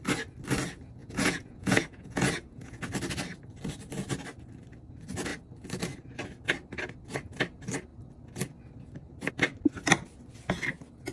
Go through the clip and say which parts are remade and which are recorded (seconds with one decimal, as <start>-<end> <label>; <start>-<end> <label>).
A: 0.0-1.0 recorded; 1.0-2.8 remade; 2.8-11.1 recorded